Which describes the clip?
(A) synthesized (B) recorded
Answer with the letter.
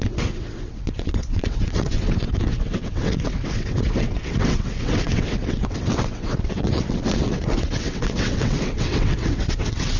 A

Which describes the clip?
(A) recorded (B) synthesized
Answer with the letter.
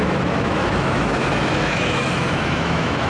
B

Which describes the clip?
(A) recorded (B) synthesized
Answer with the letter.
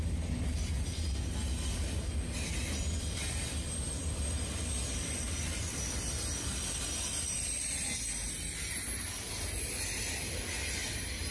A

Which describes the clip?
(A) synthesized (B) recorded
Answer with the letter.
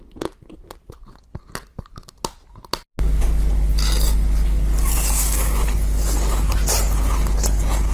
B